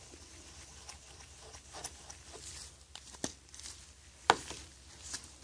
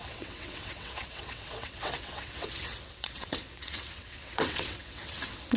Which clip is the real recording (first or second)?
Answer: first